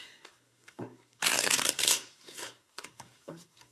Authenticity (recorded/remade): remade